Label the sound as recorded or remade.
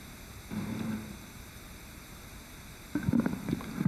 remade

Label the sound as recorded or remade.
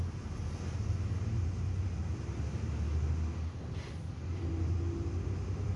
recorded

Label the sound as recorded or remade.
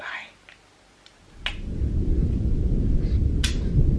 recorded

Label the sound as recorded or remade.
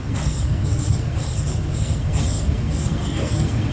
remade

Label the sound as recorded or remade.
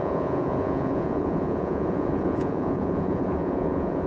remade